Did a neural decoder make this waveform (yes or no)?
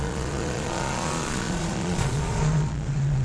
yes